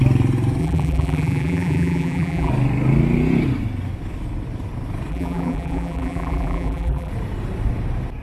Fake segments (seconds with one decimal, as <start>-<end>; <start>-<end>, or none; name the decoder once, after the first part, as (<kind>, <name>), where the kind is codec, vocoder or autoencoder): 0.6-2.5 (vocoder, BigVGAN v2); 5.1-7.1